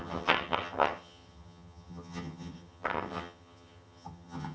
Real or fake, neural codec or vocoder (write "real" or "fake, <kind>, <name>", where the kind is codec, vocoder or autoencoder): fake, vocoder, HiFi-GAN